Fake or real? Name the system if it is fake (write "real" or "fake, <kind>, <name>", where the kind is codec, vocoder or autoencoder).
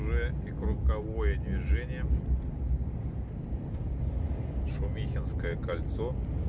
real